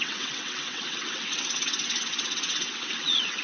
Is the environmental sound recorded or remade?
remade